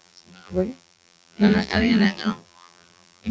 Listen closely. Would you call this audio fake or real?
fake